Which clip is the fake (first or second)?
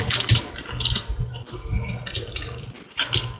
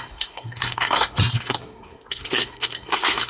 second